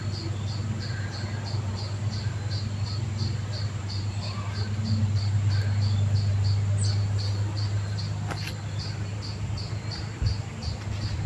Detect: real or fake real